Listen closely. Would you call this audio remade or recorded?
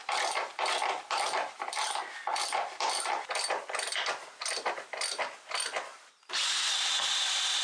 recorded